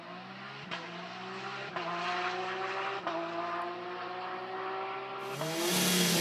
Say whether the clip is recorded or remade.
recorded